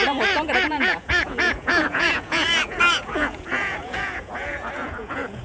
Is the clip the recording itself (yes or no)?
no